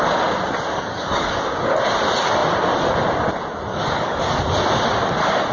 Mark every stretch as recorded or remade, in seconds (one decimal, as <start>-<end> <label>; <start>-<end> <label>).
0.0-0.7 recorded; 0.7-1.4 remade; 1.4-3.7 recorded; 3.7-4.4 remade; 4.4-5.5 recorded